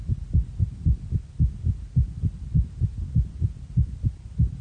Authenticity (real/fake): real